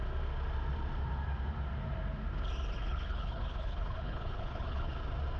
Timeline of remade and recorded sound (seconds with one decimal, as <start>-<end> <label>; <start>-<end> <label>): 0.0-2.9 recorded; 2.9-5.0 remade; 5.0-5.4 recorded